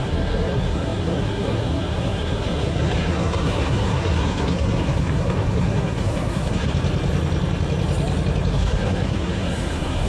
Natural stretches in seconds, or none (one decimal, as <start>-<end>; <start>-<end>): 6.7-8.5

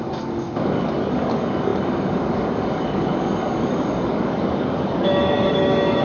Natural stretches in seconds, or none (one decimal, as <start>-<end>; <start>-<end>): none

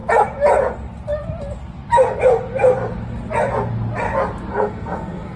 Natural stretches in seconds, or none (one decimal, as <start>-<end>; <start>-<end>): 0.0-4.5

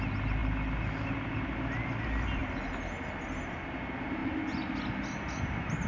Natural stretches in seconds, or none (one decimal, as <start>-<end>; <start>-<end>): 0.0-5.9

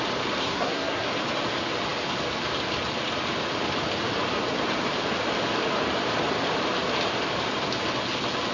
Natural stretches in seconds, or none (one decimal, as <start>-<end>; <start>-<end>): 0.0-0.4; 1.1-8.5